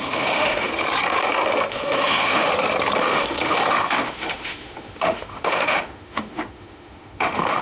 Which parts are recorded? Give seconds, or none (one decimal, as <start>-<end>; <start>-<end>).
0.7-1.7; 2.5-3.0